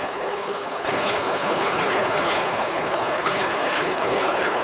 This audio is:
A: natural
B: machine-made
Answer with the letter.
B